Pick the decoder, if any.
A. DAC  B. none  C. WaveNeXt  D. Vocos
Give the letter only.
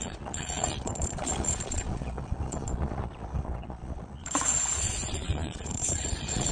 D